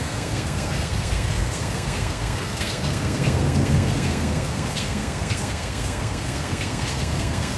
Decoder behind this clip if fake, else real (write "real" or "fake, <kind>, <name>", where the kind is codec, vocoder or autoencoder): fake, codec, SNAC